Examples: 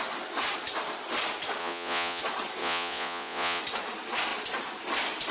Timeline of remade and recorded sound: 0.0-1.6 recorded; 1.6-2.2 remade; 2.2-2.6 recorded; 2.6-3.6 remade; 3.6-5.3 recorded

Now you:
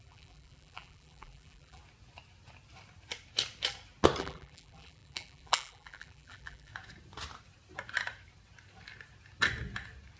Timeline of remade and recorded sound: 0.0-1.8 remade; 1.8-4.2 recorded; 4.2-6.7 remade; 6.7-10.2 recorded